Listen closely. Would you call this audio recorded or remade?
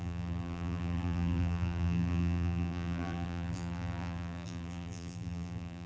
remade